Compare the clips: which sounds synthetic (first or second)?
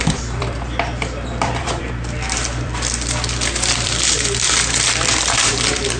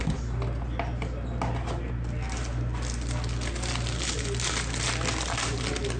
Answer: first